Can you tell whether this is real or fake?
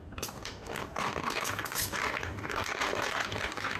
fake